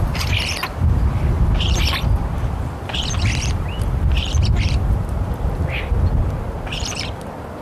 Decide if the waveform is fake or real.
fake